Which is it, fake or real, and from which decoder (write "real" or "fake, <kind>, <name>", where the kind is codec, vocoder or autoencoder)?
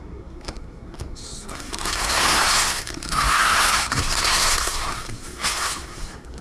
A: fake, codec, SNAC